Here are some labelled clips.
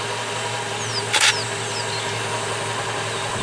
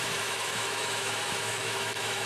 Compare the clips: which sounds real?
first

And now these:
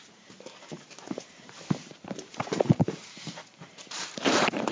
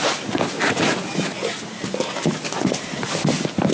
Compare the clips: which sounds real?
second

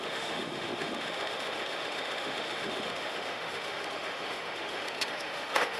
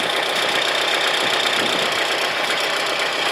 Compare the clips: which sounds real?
second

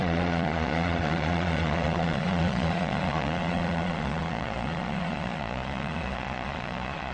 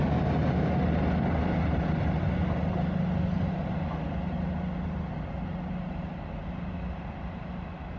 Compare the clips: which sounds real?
second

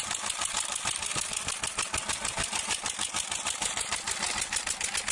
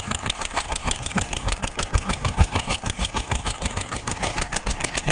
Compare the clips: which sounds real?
first